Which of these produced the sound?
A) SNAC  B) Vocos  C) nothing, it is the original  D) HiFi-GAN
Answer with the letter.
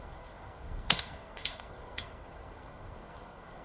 A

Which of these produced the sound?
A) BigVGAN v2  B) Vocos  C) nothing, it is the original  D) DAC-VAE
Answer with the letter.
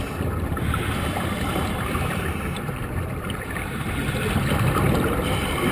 A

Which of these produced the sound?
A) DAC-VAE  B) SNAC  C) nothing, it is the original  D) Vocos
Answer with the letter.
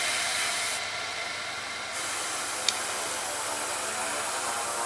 C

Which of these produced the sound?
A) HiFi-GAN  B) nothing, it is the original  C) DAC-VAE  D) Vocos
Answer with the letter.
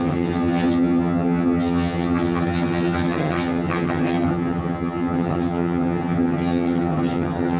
A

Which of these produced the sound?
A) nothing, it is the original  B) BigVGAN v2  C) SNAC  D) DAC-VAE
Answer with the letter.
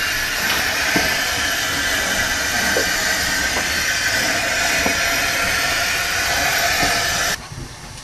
A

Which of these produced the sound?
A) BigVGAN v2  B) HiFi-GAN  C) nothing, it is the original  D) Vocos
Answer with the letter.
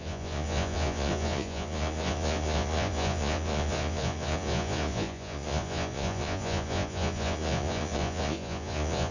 D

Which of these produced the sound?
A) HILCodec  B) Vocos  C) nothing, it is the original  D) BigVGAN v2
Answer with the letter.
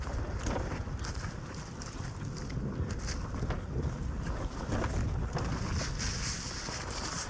C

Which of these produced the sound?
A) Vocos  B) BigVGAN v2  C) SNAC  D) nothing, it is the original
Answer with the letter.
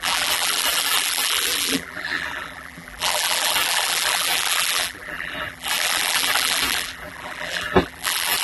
B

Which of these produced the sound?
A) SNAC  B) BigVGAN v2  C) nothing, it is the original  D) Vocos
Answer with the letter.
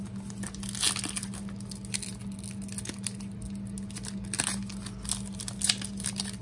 C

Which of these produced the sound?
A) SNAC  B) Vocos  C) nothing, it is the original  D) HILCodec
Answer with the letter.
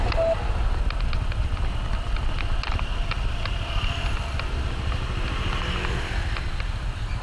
C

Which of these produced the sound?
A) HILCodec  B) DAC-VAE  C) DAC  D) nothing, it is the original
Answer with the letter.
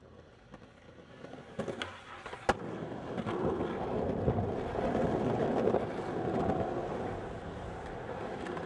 D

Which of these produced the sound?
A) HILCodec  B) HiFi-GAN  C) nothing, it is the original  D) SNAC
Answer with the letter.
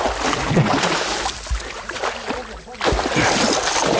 C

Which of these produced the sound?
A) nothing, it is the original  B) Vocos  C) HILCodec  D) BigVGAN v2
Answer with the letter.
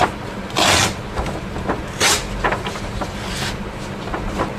A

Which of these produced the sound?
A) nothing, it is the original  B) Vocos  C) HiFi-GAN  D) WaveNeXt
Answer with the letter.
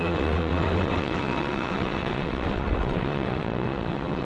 D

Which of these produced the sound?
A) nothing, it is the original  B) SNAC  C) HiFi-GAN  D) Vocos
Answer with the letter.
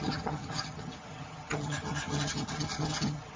C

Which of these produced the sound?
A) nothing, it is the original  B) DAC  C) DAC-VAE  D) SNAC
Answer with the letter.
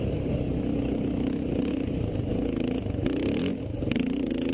A